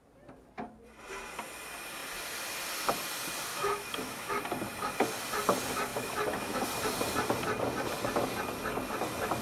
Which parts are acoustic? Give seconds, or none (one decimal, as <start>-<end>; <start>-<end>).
0.0-3.5; 4.4-5.9; 6.6-9.4